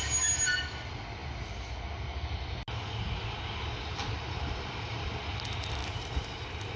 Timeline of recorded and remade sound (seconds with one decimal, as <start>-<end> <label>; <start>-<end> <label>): 0.0-4.0 recorded; 4.0-5.1 remade; 5.1-5.8 recorded; 5.8-6.8 remade